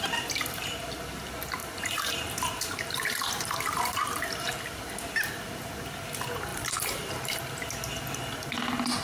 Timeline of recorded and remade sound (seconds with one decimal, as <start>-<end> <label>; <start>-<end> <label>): 0.0-1.6 recorded; 1.6-4.5 remade; 4.5-6.5 recorded; 6.5-7.4 remade; 7.4-9.0 recorded